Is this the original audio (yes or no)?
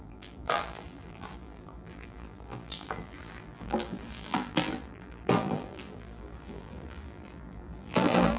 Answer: no